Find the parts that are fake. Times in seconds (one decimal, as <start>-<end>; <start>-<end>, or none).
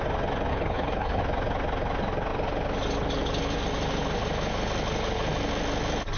0.5-1.2